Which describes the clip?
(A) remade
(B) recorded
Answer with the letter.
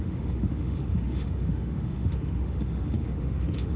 A